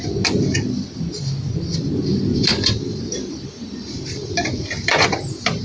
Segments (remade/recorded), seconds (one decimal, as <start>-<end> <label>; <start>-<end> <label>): 0.0-2.1 recorded; 2.1-4.7 remade; 4.7-5.6 recorded